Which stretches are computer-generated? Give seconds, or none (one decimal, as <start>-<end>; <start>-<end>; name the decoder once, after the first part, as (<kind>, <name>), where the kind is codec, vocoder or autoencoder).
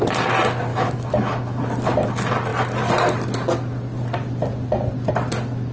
0.7-1.6 (autoencoder, DAC-VAE)